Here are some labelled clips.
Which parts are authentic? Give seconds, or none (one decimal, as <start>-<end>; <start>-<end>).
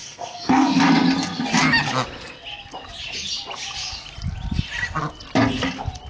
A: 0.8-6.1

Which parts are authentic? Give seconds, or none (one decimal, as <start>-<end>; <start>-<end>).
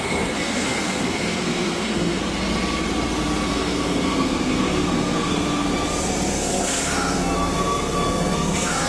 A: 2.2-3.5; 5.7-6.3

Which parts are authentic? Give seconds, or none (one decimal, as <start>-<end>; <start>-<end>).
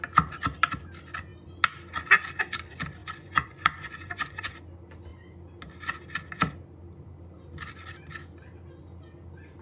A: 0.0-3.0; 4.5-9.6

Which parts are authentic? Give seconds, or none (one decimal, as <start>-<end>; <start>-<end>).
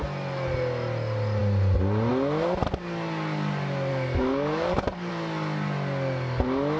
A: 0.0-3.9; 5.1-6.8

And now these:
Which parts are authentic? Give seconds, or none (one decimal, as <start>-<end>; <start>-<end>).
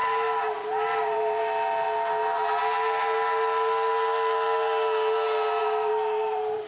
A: 1.4-5.6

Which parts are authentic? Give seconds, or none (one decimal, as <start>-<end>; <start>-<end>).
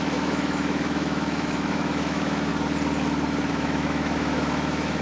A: 2.5-3.5